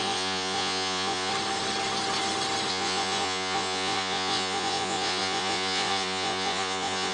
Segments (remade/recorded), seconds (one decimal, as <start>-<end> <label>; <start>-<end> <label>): 0.0-1.3 remade; 1.3-2.7 recorded; 2.7-7.1 remade